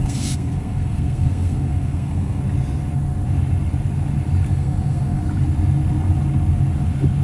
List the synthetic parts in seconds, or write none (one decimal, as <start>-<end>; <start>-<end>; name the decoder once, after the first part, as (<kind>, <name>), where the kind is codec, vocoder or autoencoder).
0.0-2.4 (codec, SNAC); 4.5-5.2